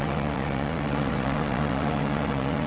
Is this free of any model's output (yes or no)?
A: no